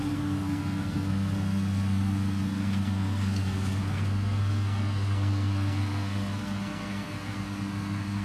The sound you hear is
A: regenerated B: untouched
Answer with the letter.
A